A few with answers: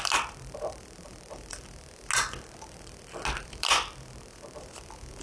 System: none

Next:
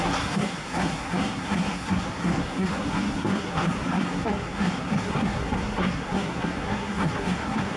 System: codec, SNAC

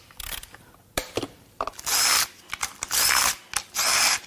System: none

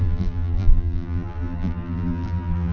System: vocoder, BigVGAN v2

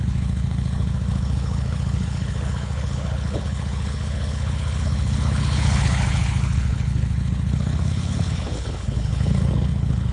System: codec, HILCodec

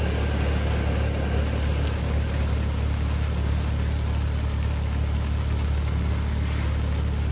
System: none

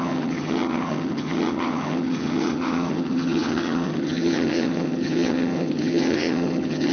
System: vocoder, HiFi-GAN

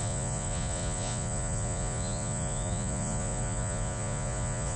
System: vocoder, Vocos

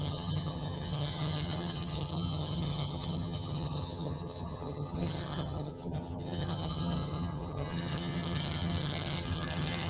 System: vocoder, HiFi-GAN